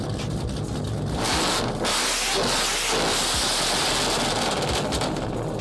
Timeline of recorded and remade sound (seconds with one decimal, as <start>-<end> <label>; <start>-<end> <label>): 0.0-5.6 recorded